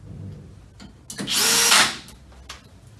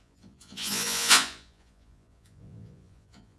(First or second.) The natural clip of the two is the first